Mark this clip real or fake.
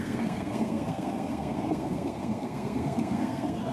fake